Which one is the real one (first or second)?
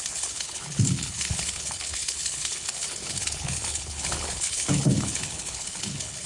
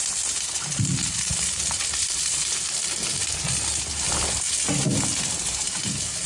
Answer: second